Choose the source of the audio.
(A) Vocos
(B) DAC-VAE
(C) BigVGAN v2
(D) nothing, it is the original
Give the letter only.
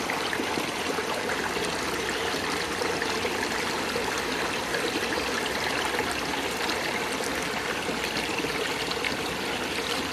D